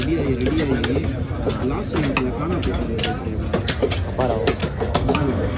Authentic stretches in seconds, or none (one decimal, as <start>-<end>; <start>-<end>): 0.0-4.6